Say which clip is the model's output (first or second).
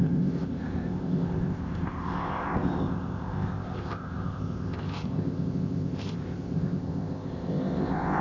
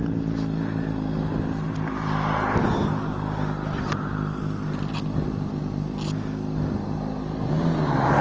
first